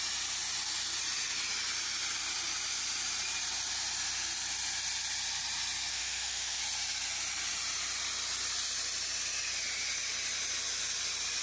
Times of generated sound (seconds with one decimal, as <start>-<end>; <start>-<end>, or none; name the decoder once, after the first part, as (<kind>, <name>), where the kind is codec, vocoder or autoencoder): 5.9-6.6 (autoencoder, DAC-VAE)